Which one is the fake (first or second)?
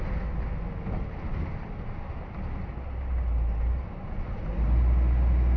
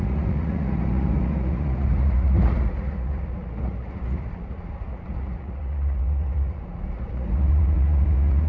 second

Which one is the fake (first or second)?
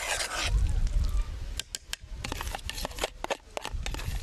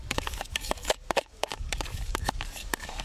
second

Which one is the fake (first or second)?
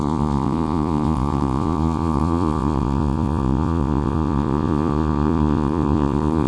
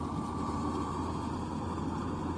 first